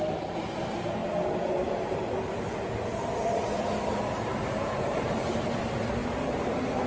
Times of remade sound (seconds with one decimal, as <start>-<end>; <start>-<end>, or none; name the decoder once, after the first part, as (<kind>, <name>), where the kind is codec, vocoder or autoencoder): 4.3-5.6 (vocoder, BigVGAN v2)